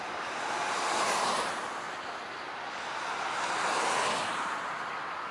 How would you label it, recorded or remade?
recorded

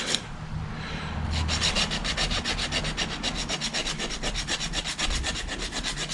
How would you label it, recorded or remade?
recorded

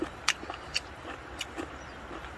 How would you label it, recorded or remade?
remade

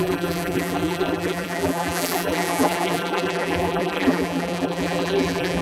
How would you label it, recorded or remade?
remade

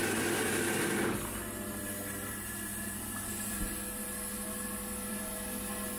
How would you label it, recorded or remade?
recorded